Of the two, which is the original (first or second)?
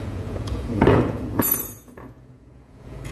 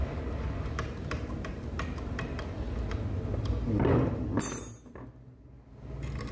second